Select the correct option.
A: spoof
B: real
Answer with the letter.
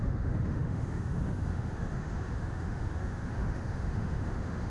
A